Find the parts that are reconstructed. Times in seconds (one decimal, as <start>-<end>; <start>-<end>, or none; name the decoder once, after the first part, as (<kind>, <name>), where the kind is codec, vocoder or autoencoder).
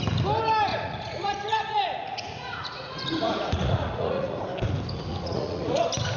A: 0.7-4.4 (vocoder, Vocos); 5.1-5.8